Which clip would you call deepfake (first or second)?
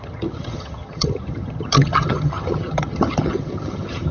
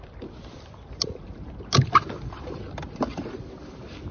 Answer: first